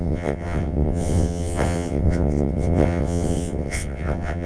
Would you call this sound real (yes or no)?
no